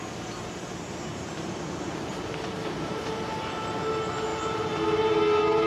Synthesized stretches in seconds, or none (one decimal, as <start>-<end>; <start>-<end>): 1.1-2.1; 2.6-3.3; 4.3-4.8